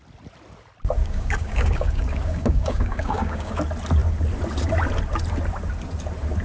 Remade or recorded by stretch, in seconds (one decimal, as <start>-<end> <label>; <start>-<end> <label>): 0.0-1.0 recorded; 1.0-3.6 remade; 3.6-6.4 recorded